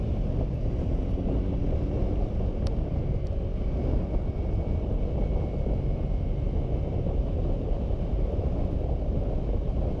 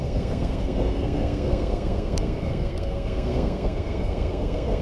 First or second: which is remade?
second